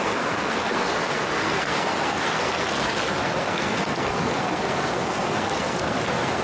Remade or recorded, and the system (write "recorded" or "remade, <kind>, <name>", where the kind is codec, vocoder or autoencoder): remade, codec, SNAC